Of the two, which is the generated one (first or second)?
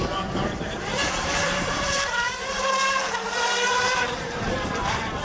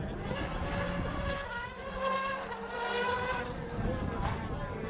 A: first